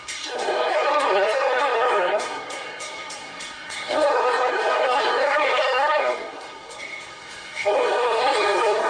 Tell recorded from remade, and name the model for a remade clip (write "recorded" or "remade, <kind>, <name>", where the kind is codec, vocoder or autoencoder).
remade, codec, SNAC